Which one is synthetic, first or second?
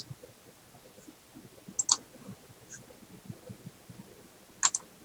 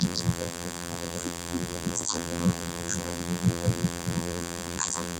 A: second